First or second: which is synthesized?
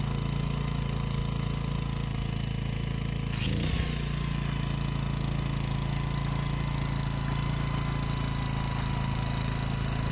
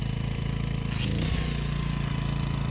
second